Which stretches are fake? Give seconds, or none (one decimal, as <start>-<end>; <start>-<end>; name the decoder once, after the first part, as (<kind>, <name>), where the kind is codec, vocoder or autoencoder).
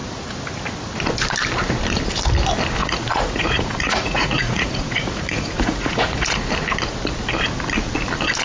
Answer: 2.8-6.5 (vocoder, Vocos)